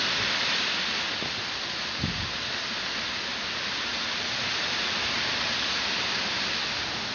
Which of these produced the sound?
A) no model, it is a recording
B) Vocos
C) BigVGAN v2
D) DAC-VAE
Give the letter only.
A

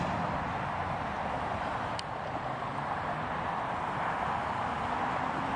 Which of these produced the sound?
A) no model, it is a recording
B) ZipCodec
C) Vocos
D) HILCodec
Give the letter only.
A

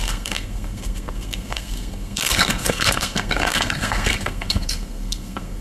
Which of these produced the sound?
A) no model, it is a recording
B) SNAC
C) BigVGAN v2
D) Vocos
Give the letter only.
B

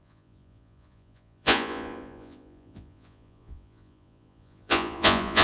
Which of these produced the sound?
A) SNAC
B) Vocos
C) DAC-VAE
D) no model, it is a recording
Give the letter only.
B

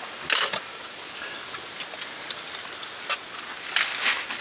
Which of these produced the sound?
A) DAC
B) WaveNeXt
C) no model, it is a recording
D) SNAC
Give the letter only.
C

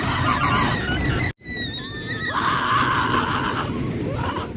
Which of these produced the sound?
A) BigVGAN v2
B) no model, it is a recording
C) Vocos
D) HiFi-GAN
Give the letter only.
B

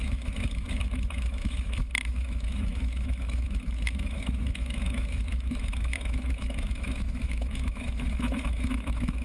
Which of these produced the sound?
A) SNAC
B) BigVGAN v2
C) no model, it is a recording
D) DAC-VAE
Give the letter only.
D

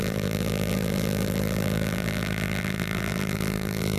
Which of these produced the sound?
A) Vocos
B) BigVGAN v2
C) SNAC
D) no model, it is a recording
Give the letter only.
B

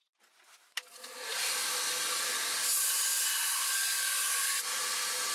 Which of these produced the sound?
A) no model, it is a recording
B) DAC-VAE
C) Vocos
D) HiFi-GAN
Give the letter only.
A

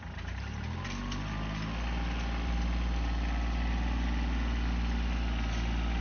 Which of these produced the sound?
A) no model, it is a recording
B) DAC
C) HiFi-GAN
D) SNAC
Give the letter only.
A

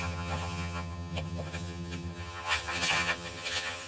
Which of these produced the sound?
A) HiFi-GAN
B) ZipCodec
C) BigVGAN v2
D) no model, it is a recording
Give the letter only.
A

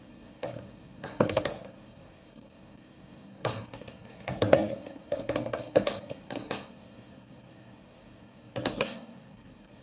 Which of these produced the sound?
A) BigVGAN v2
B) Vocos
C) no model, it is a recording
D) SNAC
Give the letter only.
D